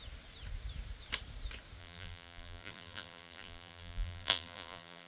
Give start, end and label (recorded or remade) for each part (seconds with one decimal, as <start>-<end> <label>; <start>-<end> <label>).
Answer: 0.0-1.8 recorded; 1.8-5.1 remade